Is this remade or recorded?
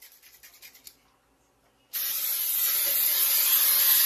recorded